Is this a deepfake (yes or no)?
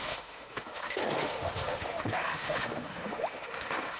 yes